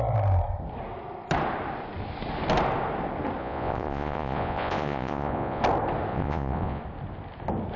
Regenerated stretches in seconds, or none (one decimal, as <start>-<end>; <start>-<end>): 3.4-5.6; 6.1-6.8